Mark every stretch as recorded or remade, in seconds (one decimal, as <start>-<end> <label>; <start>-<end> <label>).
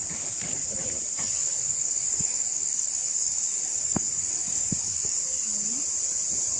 0.0-1.4 recorded; 1.4-5.4 remade; 5.4-6.6 recorded